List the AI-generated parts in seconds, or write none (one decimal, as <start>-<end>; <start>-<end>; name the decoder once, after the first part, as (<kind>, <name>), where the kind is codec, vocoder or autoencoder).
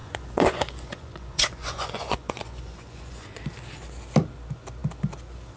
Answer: 0.0-3.4 (vocoder, Vocos)